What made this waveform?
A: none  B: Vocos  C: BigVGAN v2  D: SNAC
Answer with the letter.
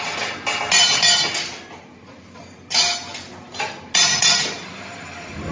A